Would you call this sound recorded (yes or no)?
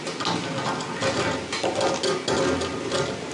yes